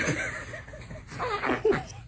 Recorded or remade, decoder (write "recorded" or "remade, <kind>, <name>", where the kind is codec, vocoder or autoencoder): recorded